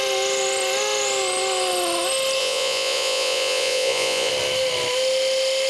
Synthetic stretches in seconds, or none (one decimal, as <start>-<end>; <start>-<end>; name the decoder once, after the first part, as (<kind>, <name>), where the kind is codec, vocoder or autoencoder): 2.4-4.3 (vocoder, Vocos)